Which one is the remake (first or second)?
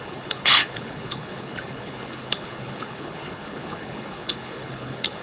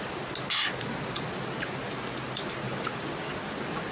first